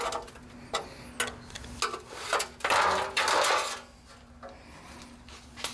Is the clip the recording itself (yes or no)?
yes